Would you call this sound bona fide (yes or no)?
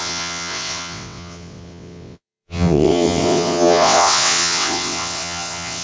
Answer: no